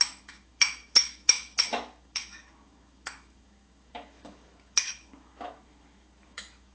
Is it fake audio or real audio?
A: fake